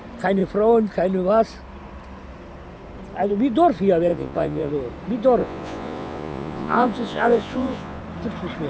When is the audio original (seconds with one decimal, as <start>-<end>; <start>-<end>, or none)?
0.0-4.1; 4.7-5.4; 8.0-8.7